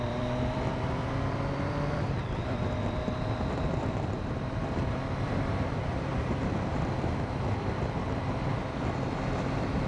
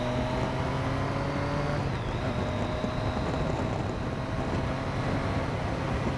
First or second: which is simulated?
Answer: first